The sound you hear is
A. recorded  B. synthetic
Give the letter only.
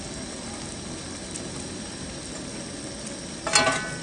A